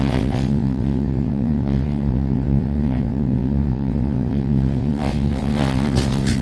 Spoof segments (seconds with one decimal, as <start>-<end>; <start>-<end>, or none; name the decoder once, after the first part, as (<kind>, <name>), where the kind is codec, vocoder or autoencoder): 0.0-6.4 (vocoder, WaveNeXt)